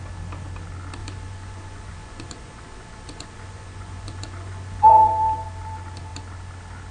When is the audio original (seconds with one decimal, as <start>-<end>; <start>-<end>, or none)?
0.0-1.0; 5.1-6.9